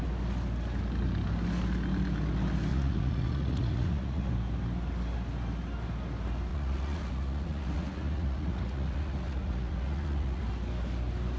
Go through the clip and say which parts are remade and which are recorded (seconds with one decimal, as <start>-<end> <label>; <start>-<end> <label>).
0.0-2.7 recorded; 2.7-4.3 remade; 4.3-6.5 recorded; 6.5-10.4 remade; 10.4-11.4 recorded